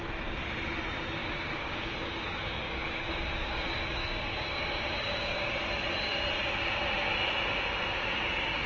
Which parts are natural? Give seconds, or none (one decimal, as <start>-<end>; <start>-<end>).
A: 0.0-1.2; 5.5-8.7